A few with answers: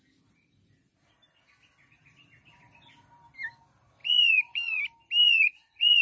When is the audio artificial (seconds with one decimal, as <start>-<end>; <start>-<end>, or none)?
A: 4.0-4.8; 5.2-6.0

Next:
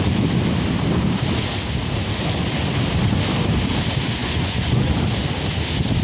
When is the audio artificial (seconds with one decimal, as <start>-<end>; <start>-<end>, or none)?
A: 4.2-5.0

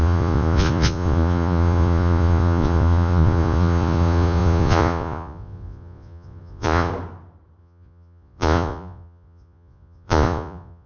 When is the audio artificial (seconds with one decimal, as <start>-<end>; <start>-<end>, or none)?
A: 0.0-6.9; 7.6-10.9

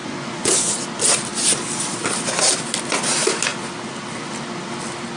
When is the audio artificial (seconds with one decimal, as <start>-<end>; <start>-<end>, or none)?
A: 0.0-0.8

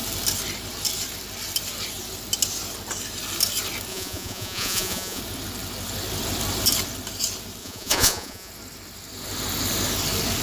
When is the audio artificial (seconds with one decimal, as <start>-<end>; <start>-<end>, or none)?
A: 3.9-5.2; 7.6-8.5

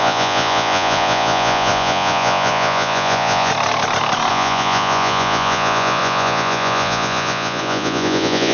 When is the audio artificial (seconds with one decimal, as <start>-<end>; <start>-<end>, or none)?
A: 0.0-3.5; 4.3-8.5

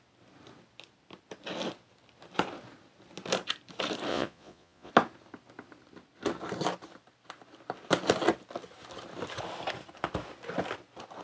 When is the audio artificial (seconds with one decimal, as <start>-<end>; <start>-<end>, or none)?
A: 4.1-4.9